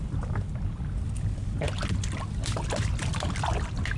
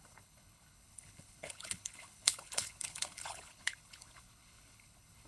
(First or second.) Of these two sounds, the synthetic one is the second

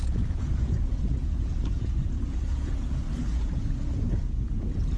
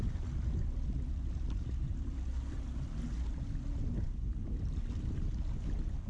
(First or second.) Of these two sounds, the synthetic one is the first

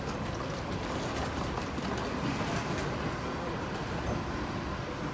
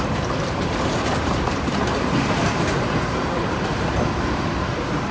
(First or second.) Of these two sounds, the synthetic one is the second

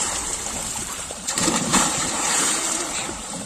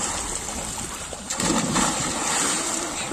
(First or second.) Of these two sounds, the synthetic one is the first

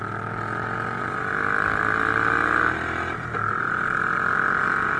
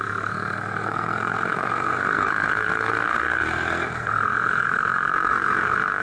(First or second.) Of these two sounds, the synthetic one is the second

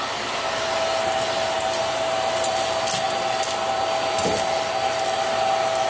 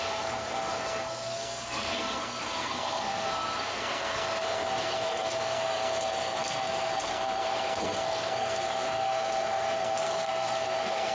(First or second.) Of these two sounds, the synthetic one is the second